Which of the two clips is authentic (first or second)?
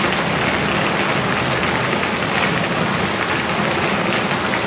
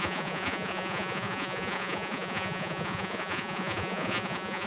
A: first